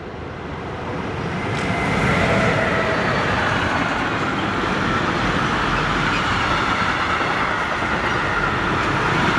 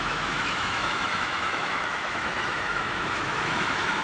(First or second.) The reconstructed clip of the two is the second